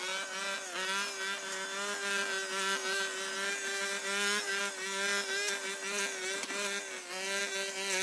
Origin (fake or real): real